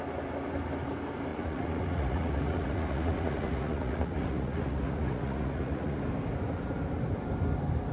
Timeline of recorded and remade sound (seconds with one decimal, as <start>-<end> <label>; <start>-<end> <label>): 0.0-1.3 recorded; 1.3-6.0 remade; 6.0-7.9 recorded